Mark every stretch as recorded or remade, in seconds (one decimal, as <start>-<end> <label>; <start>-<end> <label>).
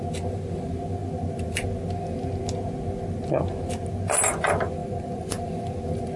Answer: 0.0-4.8 recorded; 4.8-5.5 remade; 5.5-6.2 recorded